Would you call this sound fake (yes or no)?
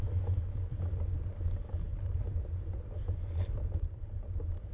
no